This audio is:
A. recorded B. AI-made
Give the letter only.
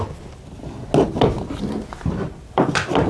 A